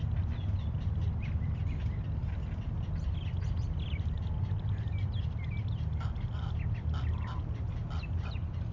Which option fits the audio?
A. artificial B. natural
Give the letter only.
B